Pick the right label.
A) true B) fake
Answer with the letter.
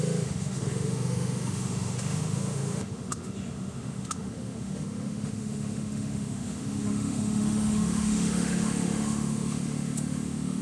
B